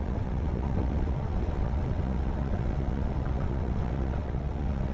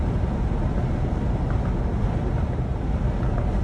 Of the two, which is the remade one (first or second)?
first